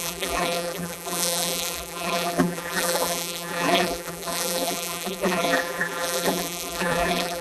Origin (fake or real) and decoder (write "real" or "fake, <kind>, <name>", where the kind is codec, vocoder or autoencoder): fake, vocoder, BigVGAN v2